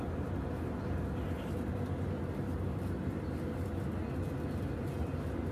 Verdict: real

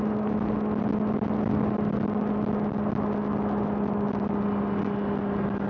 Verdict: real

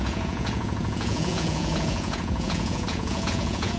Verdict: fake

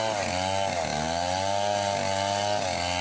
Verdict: real